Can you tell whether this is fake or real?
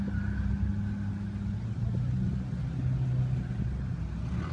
real